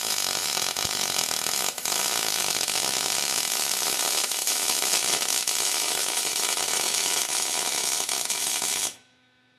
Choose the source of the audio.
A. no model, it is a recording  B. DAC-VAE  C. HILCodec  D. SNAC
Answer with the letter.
B